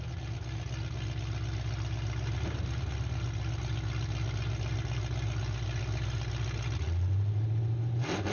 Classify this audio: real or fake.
real